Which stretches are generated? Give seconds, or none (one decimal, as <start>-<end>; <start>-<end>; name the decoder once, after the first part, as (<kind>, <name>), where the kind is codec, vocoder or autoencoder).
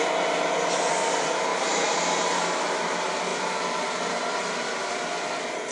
1.5-2.0 (vocoder, BigVGAN v2)